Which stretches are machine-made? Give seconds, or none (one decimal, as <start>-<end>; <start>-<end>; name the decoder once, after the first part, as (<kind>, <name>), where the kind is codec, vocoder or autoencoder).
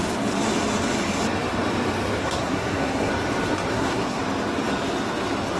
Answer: 2.2-3.1 (codec, SNAC); 3.7-4.2